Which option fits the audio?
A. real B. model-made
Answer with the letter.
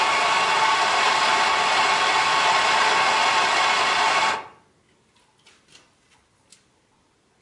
A